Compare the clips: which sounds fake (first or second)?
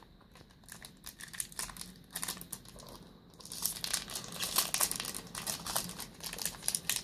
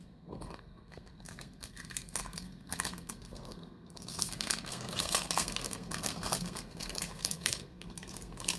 second